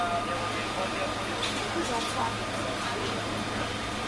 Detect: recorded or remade recorded